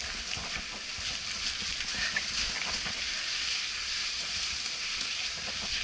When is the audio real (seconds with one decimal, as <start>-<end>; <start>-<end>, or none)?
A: 0.0-5.8